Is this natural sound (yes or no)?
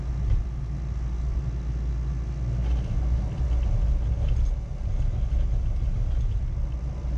yes